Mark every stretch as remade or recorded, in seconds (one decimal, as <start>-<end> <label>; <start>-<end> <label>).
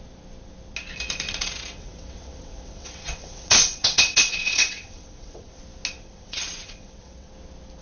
0.0-1.4 recorded; 1.4-5.6 remade; 5.6-6.0 recorded; 6.0-7.3 remade; 7.3-7.8 recorded